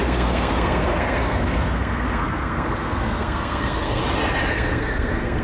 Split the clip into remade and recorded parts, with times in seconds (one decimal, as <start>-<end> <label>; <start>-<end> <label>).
0.0-4.0 remade; 4.0-4.5 recorded; 4.5-5.4 remade